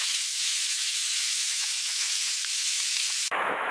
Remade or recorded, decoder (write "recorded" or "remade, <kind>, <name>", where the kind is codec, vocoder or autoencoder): remade, autoencoder, DAC-VAE